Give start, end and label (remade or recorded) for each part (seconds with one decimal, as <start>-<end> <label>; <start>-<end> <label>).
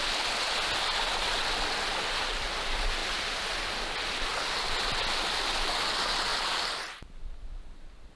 0.0-8.2 recorded